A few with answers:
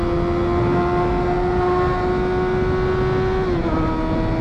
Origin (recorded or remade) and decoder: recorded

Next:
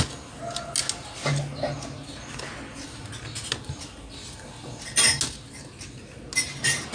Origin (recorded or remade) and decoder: recorded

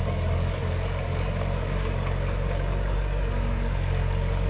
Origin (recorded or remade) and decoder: remade, codec, DAC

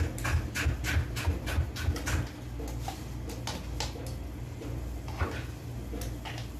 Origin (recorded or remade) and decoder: recorded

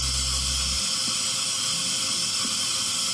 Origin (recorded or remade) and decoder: recorded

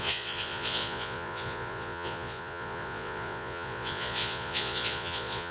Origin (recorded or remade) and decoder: remade, vocoder, Vocos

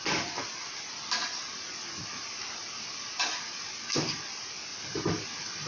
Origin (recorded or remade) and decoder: recorded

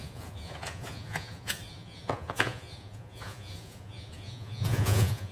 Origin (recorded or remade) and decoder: remade, vocoder, Vocos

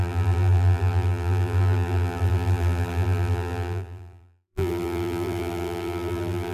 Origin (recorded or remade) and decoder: remade, vocoder, BigVGAN v2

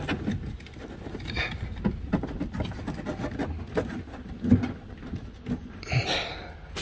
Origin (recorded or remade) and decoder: recorded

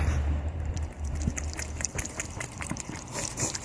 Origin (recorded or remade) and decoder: remade, vocoder, BigVGAN v2